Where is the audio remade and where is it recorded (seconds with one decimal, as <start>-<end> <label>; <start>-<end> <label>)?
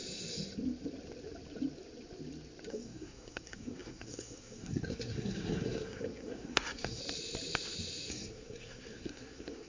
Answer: 0.0-2.7 recorded; 2.7-7.0 remade; 7.0-8.1 recorded; 8.1-9.7 remade